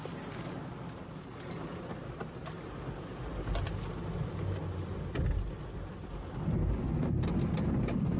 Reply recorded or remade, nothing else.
recorded